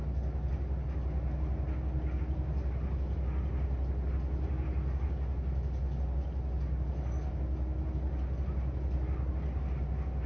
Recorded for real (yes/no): yes